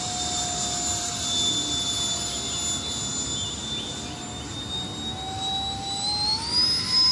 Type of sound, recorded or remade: recorded